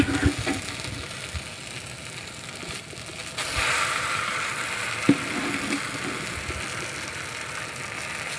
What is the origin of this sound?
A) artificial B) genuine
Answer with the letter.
B